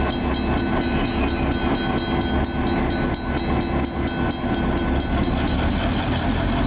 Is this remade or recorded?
recorded